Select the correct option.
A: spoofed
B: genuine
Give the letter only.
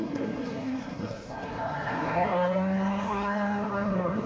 A